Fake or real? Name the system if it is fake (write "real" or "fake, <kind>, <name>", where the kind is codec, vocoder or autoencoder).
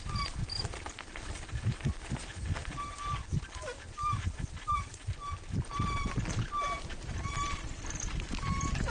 real